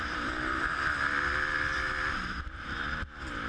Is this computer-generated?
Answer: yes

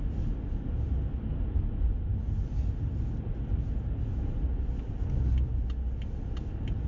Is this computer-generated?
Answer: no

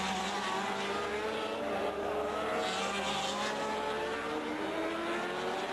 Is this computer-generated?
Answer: no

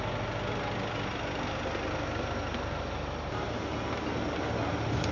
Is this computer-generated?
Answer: no